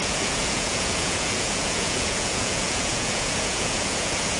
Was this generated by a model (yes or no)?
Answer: yes